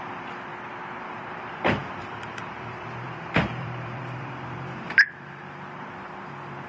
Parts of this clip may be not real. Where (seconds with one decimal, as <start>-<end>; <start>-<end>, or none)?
0.0-0.5; 1.0-6.7